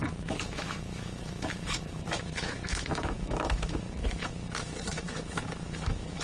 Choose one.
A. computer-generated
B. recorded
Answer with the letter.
A